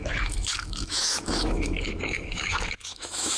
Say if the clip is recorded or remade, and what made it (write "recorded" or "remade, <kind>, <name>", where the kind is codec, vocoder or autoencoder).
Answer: remade, autoencoder, DAC-VAE